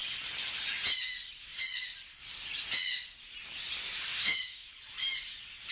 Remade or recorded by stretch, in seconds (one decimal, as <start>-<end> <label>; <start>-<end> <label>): 0.0-4.1 recorded; 4.1-4.7 remade; 4.7-5.7 recorded